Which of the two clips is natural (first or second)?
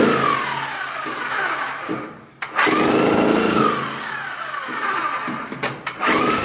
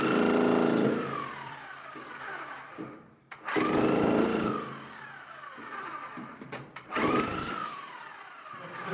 first